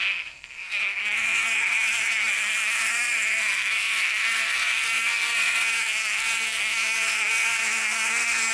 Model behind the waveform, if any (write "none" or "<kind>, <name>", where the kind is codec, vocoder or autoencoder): codec, SNAC